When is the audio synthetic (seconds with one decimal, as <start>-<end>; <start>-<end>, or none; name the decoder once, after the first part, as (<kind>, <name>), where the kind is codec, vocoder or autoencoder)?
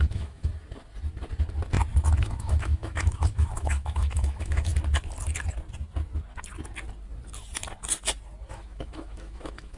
0.0-0.5 (autoencoder, DAC-VAE); 2.2-4.7; 8.5-9.8